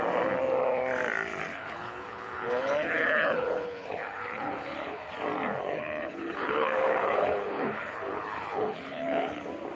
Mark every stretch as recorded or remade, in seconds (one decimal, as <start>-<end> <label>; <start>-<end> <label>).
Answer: 0.0-1.5 recorded; 1.5-5.1 remade; 5.1-5.6 recorded; 5.6-9.4 remade; 9.4-9.8 recorded

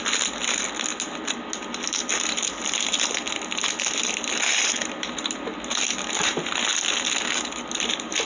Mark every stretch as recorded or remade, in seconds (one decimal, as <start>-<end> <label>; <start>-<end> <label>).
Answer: 0.0-8.3 recorded

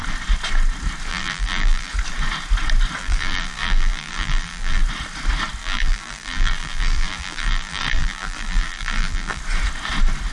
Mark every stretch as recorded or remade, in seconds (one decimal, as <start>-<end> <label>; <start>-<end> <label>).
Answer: 0.0-1.1 recorded; 1.1-1.9 remade; 1.9-3.0 recorded; 3.0-4.8 remade; 4.8-5.6 recorded; 5.6-9.4 remade; 9.4-10.3 recorded

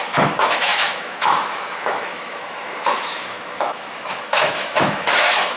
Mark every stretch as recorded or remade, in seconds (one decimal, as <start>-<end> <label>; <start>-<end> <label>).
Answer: 0.0-5.6 remade

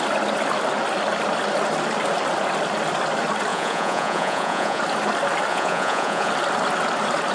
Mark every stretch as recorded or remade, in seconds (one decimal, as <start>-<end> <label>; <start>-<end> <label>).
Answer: 0.0-3.5 recorded; 3.5-4.8 remade; 4.8-5.5 recorded; 5.5-6.3 remade; 6.3-7.3 recorded